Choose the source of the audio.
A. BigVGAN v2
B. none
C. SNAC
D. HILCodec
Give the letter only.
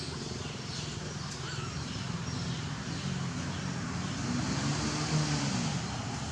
B